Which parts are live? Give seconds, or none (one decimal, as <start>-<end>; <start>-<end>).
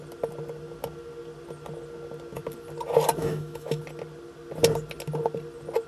0.0-3.2; 3.8-5.9